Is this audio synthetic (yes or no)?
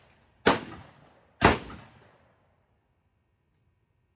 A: no